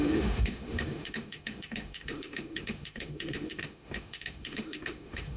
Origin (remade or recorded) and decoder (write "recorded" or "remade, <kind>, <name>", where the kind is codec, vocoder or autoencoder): remade, autoencoder, DAC-VAE